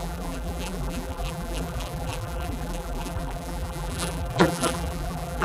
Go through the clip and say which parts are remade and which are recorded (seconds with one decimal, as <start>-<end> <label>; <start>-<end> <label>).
0.0-5.4 remade